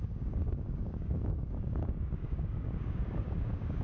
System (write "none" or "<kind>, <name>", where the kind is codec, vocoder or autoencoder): codec, DAC